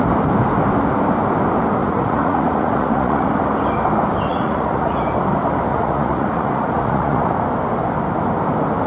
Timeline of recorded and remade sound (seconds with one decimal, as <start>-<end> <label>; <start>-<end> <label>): 0.0-1.8 recorded; 1.8-3.3 remade; 3.3-4.3 recorded; 4.3-5.0 remade; 5.0-5.7 recorded; 5.7-7.3 remade; 7.3-8.9 recorded